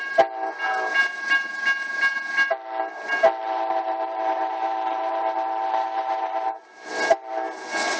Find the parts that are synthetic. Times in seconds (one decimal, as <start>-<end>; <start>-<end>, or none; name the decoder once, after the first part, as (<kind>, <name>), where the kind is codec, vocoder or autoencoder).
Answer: 3.4-6.9 (vocoder, BigVGAN v2)